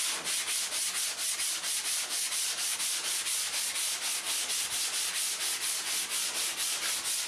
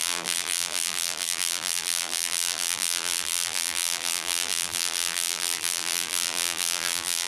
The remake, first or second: second